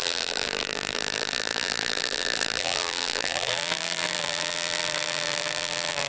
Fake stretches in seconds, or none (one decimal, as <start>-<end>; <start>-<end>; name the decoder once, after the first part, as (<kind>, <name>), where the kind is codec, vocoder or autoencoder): 0.0-6.1 (vocoder, BigVGAN v2)